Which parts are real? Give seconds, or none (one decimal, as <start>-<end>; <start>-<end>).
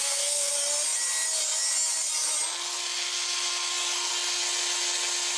0.5-5.4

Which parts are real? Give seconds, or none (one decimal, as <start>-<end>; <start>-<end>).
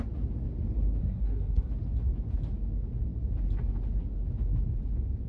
0.0-1.0; 1.7-5.3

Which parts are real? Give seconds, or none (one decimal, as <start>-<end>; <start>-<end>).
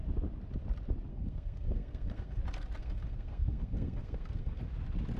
0.0-1.1; 2.4-2.8; 4.6-5.2